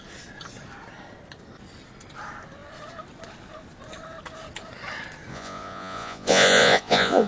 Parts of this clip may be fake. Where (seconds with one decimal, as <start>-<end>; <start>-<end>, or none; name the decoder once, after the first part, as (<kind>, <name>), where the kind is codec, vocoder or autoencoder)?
5.3-7.3 (vocoder, Vocos)